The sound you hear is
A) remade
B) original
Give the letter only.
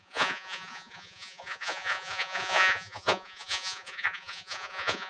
A